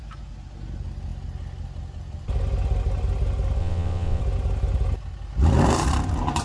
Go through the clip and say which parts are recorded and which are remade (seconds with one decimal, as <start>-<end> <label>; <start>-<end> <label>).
0.0-3.6 recorded; 3.6-4.2 remade; 4.2-6.4 recorded